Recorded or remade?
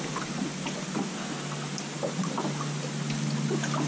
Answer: recorded